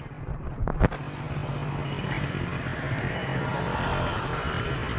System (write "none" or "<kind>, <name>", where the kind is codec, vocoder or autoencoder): none